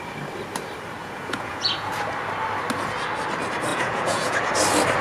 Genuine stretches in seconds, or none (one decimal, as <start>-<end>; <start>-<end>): 0.0-1.0; 1.9-3.7; 4.4-5.0